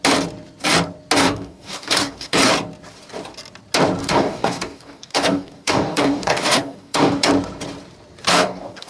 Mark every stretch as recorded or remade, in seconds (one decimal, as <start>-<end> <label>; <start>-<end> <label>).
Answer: 0.0-1.2 recorded; 1.2-2.4 remade; 2.4-4.0 recorded; 4.0-7.3 remade; 7.3-8.3 recorded; 8.3-8.9 remade